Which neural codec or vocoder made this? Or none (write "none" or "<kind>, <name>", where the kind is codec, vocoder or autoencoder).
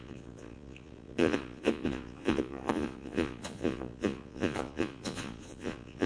vocoder, Vocos